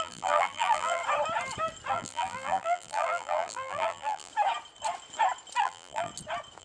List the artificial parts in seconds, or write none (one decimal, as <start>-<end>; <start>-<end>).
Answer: 0.0-1.0; 1.9-4.3; 5.6-6.1